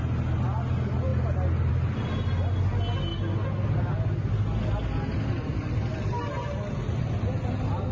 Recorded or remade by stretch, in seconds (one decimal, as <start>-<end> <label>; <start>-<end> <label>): 0.0-7.9 recorded